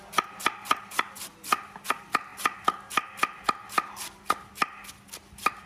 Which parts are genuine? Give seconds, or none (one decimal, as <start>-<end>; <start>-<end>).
0.0-5.7